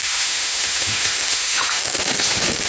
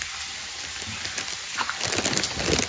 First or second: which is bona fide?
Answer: second